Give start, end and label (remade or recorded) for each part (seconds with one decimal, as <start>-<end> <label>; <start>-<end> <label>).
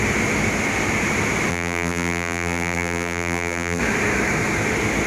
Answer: 0.0-1.5 recorded; 1.5-3.8 remade; 3.8-5.1 recorded